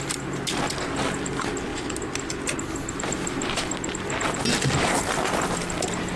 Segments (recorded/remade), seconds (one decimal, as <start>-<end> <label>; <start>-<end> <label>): 0.0-6.2 recorded